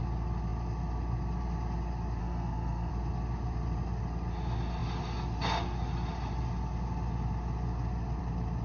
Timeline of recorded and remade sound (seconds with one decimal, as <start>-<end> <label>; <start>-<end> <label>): 0.0-2.2 recorded; 2.2-2.9 remade; 2.9-8.6 recorded